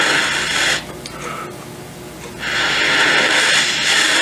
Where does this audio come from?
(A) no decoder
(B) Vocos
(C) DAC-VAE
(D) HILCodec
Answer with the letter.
A